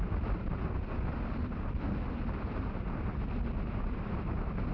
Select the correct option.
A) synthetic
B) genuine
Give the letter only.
B